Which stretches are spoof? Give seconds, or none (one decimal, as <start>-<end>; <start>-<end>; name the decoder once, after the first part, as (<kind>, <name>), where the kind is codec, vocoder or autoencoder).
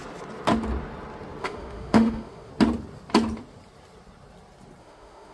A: 1.4-2.5 (autoencoder, DAC-VAE); 4.8-5.3